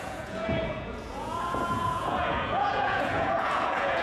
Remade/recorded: remade